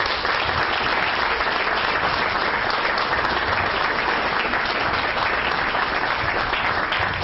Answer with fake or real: real